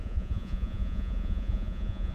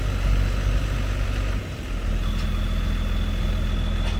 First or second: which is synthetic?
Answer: first